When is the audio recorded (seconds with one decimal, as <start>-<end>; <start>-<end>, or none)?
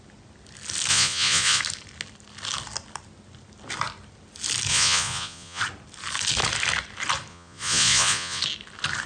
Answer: 0.0-0.9; 1.6-4.7; 5.6-7.3; 8.4-9.1